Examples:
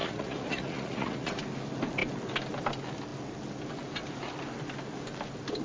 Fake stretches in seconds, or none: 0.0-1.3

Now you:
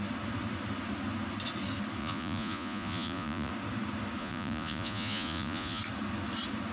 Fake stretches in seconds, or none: 2.0-3.5; 4.2-5.8

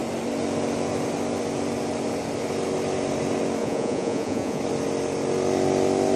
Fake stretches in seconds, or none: 3.6-4.6